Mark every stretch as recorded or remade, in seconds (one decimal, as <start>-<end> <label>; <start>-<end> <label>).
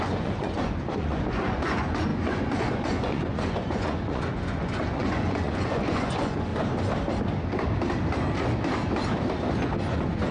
0.0-6.5 remade; 6.5-9.8 recorded; 9.8-10.3 remade